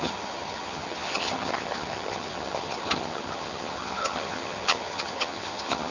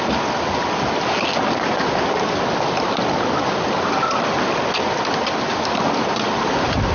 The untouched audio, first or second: second